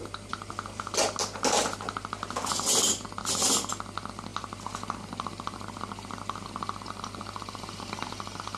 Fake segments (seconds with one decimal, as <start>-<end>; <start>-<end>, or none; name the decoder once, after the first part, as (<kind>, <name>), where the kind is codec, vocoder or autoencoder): none